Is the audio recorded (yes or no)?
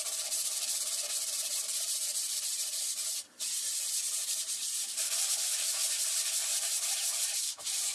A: no